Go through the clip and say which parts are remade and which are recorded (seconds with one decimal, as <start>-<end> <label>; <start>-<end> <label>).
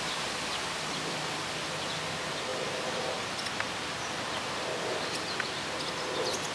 0.0-6.5 recorded